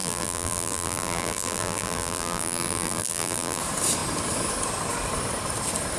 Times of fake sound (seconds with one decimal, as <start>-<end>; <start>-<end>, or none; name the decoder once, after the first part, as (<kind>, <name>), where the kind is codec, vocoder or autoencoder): 0.0-3.6 (vocoder, BigVGAN v2)

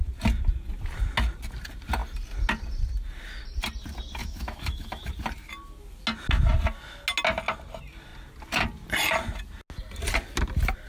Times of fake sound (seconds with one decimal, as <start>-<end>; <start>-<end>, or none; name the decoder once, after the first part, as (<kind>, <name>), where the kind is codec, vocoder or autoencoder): 4.2-5.1 (autoencoder, DAC-VAE)

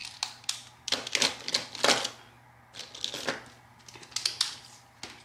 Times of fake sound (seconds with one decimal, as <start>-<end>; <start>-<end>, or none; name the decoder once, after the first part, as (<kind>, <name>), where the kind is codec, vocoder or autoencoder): none

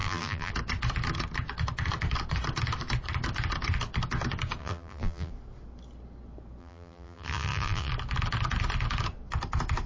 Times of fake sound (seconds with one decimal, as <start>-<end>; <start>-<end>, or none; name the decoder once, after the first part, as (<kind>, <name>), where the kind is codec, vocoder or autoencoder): 0.0-0.5 (vocoder, BigVGAN v2); 4.6-5.3; 6.6-7.9